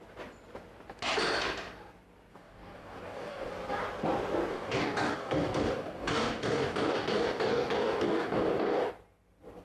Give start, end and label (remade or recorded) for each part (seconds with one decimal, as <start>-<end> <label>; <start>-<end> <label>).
0.0-2.3 recorded; 2.3-3.5 remade; 3.5-4.5 recorded; 4.5-8.9 remade; 8.9-9.6 recorded

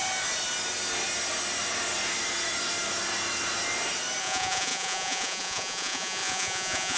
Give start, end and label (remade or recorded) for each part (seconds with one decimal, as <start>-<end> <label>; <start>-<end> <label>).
0.0-4.2 recorded; 4.2-7.0 remade

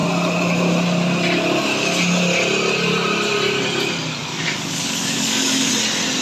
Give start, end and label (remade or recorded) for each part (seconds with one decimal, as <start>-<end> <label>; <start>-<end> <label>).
0.0-4.3 recorded; 4.3-5.7 remade; 5.7-6.2 recorded

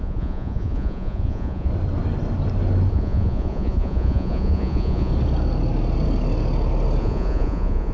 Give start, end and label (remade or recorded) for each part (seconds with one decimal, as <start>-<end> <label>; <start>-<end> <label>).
0.0-1.7 remade; 1.7-2.9 recorded; 2.9-5.1 remade; 5.1-7.0 recorded; 7.0-7.9 remade

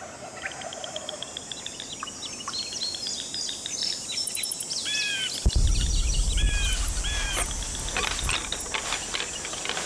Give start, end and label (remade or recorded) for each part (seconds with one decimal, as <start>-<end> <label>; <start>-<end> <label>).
0.0-0.7 recorded; 0.7-4.3 remade; 4.3-9.8 recorded

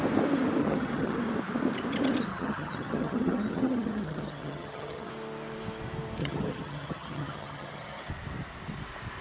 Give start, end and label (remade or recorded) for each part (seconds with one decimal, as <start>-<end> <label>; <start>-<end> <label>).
0.0-0.6 recorded; 0.6-1.2 remade; 1.2-2.3 recorded; 2.3-5.1 remade; 5.1-6.2 recorded; 6.2-8.1 remade; 8.1-9.2 recorded

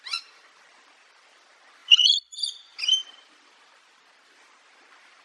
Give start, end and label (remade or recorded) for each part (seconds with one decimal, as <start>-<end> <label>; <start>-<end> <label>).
0.0-1.8 recorded; 1.8-2.8 remade; 2.8-5.2 recorded

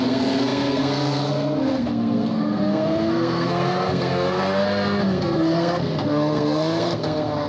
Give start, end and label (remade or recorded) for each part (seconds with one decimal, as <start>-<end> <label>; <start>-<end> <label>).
0.0-7.5 remade